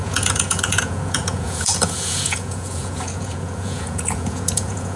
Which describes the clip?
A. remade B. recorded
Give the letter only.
A